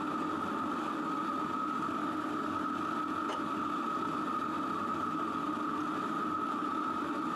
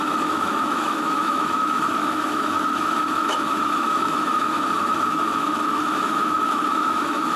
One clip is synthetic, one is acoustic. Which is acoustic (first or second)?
first